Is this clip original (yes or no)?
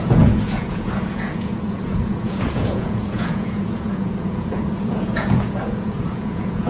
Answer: no